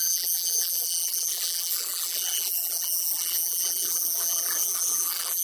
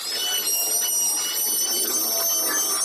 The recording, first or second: second